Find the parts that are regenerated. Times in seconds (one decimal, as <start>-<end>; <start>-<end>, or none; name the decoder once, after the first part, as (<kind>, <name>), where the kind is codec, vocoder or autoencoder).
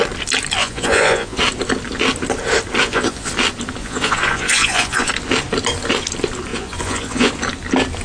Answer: 0.6-1.4 (vocoder, Vocos); 2.8-3.3; 3.8-5.1; 6.5-7.3